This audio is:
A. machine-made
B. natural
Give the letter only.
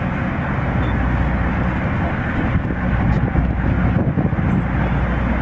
B